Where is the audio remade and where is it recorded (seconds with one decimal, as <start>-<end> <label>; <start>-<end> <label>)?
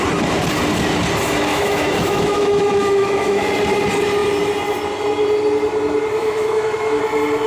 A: 0.0-1.5 recorded; 1.5-3.4 remade; 3.4-6.2 recorded; 6.2-7.0 remade; 7.0-7.5 recorded